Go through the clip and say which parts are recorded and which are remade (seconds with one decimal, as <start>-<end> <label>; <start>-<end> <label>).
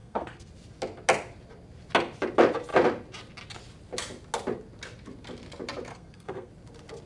0.0-0.5 remade; 0.5-5.9 recorded; 5.9-6.5 remade; 6.5-7.1 recorded